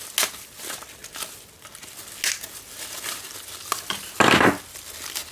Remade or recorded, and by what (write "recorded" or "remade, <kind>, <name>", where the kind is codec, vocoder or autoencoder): recorded